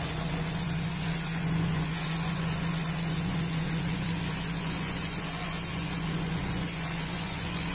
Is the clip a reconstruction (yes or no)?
yes